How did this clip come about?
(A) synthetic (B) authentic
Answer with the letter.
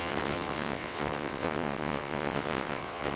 A